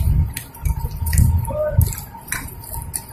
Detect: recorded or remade recorded